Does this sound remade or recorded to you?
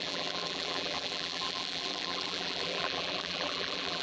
remade